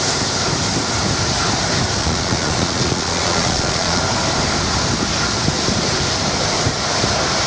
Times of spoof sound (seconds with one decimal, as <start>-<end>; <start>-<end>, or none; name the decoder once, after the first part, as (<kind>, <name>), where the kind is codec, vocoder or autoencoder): 2.0-4.0 (vocoder, Vocos)

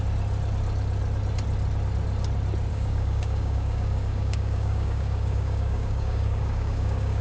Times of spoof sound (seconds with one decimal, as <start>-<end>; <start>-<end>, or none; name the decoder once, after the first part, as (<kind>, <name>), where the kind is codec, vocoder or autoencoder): 2.7-7.2 (codec, DAC)

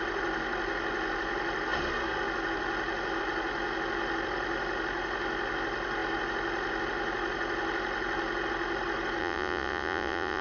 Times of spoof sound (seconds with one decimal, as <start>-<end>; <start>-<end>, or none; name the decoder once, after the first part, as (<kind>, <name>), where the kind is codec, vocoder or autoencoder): 9.2-10.4 (vocoder, Vocos)

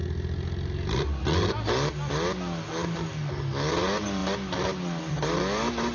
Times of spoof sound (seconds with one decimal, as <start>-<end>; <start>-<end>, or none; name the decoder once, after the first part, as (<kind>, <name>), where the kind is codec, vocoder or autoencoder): none

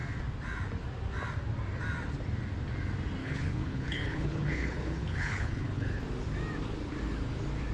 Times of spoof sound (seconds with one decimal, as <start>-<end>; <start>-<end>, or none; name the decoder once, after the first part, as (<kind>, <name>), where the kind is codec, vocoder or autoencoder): 3.2-6.0 (codec, HILCodec)

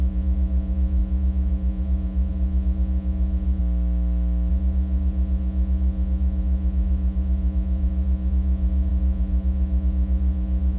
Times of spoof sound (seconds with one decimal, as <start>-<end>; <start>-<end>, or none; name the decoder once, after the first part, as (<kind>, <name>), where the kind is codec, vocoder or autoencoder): 0.0-3.6 (vocoder, Vocos); 4.5-10.8

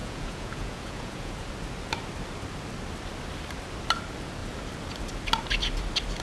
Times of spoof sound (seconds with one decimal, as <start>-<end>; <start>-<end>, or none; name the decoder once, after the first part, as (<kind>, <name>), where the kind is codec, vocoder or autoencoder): 0.0-1.5 (vocoder, Vocos)